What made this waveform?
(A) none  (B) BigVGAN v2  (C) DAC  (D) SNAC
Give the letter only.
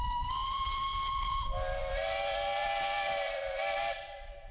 B